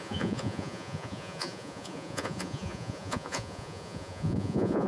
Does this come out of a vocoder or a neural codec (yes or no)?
yes